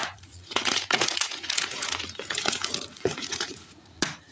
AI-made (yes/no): yes